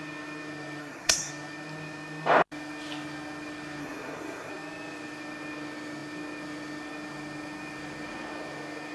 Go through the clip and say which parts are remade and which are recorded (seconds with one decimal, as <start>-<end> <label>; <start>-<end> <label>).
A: 0.0-0.8 recorded; 0.8-1.3 remade; 1.3-3.8 recorded; 3.8-4.5 remade; 4.5-8.9 recorded